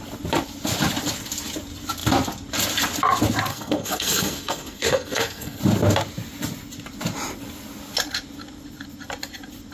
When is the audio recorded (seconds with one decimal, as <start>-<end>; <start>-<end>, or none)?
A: 0.0-3.5; 5.6-9.7